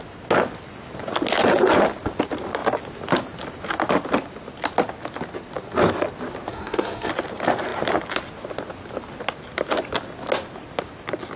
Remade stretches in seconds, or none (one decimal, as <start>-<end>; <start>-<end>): 6.5-7.1